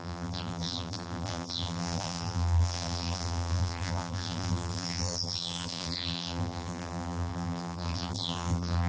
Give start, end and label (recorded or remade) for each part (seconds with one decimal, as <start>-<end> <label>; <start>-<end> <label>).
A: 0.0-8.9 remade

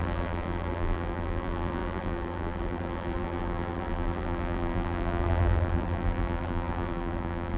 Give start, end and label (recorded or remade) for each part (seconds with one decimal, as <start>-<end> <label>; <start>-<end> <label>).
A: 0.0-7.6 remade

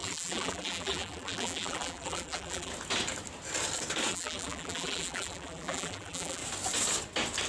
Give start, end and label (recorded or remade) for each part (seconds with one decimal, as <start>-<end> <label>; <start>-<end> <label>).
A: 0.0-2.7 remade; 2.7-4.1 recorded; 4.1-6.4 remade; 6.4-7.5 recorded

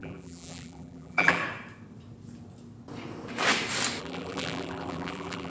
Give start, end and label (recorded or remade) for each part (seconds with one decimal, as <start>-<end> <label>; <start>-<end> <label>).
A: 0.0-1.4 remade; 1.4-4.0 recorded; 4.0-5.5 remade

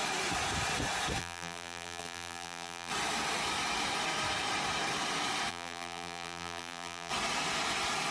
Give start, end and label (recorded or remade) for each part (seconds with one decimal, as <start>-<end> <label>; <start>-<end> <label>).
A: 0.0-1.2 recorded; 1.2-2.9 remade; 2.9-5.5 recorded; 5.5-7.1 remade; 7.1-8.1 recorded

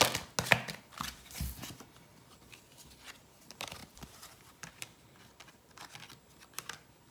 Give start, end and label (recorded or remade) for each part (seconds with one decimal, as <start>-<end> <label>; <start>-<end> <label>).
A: 0.0-2.1 recorded; 2.1-3.3 remade; 3.3-3.8 recorded; 3.8-5.9 remade; 5.9-7.1 recorded

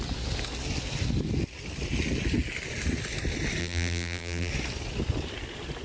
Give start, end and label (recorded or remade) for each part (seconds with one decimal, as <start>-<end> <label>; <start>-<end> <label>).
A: 0.0-3.6 recorded; 3.6-4.5 remade; 4.5-5.8 recorded